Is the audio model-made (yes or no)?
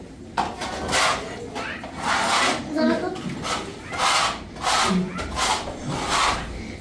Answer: no